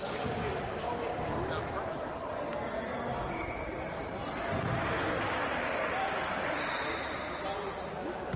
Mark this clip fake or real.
real